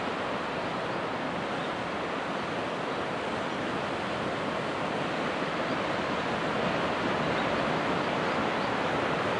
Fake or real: real